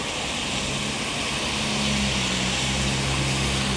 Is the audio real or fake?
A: real